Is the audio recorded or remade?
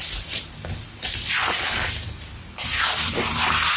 remade